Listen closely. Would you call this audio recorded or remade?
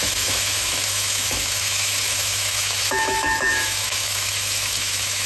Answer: remade